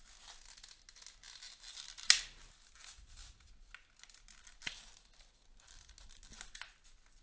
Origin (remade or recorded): recorded